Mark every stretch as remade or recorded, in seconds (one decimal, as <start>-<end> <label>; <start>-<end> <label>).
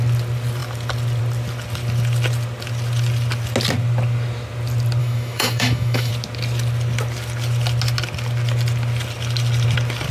0.0-5.0 recorded; 5.0-6.1 remade; 6.1-10.1 recorded